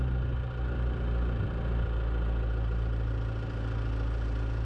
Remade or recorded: recorded